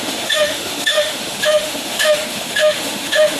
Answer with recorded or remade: remade